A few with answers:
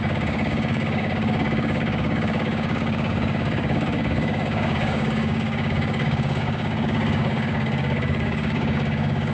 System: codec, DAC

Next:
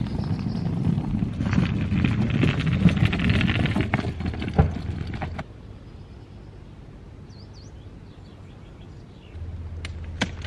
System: none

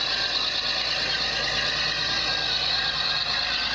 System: none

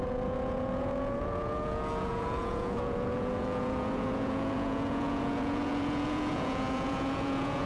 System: vocoder, Vocos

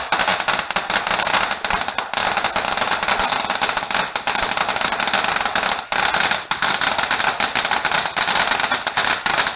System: none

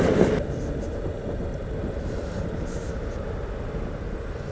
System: none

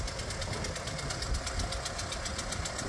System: none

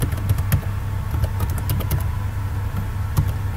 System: none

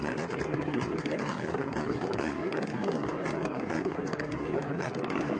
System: codec, SNAC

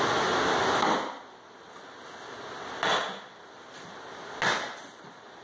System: none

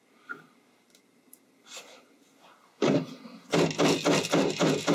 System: none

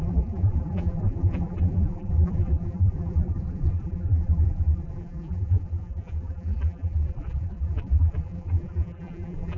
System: vocoder, BigVGAN v2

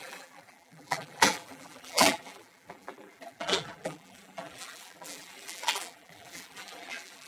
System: vocoder, BigVGAN v2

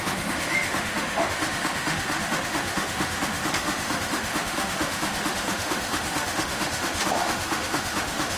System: autoencoder, DAC-VAE